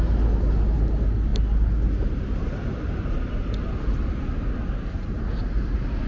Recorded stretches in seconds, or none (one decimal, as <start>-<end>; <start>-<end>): 0.0-6.1